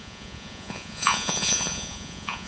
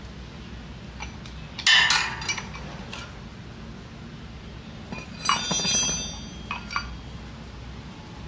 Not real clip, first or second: first